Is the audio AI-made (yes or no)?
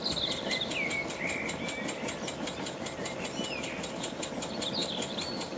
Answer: no